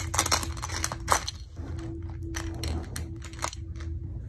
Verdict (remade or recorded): recorded